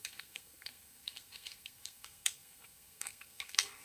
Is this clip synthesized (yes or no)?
yes